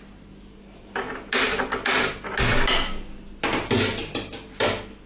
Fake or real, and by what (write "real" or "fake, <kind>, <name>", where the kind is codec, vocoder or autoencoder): real